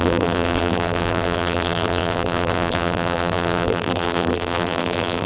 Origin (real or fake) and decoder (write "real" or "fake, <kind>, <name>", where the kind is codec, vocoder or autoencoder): fake, vocoder, BigVGAN v2